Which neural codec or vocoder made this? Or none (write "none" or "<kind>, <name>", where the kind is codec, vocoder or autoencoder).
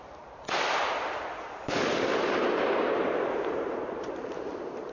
vocoder, BigVGAN v2